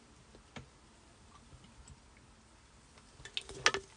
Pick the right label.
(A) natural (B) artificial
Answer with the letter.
A